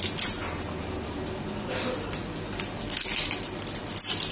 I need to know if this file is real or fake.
real